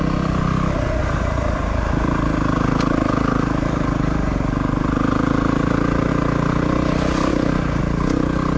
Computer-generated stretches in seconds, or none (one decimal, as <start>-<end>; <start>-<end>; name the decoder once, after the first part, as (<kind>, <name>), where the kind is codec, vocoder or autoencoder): 1.0-6.1 (vocoder, BigVGAN v2); 7.3-7.8